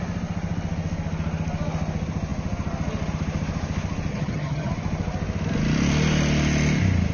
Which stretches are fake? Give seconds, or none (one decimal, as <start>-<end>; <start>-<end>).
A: 4.1-4.7